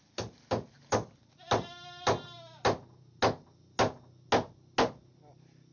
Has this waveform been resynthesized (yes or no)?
no